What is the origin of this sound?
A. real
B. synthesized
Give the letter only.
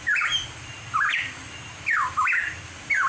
A